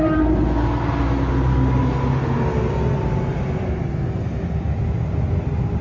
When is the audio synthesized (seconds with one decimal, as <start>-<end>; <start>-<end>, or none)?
none